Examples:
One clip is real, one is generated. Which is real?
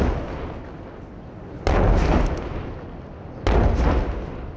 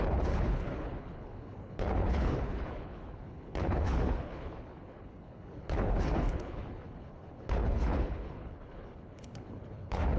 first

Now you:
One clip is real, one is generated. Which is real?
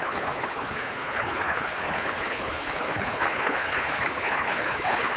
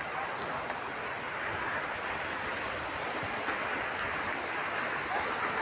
second